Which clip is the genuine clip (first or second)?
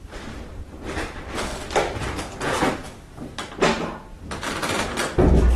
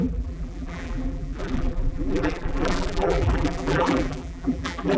first